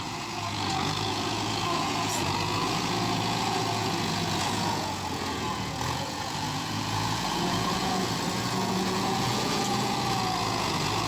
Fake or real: fake